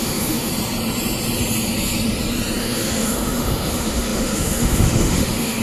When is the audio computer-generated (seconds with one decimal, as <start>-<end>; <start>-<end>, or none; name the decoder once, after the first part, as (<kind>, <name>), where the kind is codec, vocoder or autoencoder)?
0.0-0.5 (autoencoder, DAC-VAE); 2.6-5.6